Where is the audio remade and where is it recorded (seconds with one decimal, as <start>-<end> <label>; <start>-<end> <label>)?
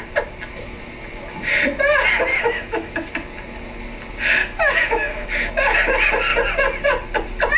0.0-2.3 recorded; 2.3-3.1 remade; 3.1-4.4 recorded; 4.4-5.5 remade; 5.5-7.6 recorded